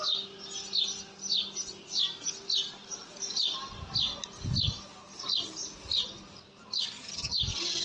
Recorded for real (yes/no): yes